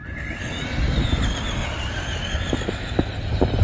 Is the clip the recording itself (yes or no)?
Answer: yes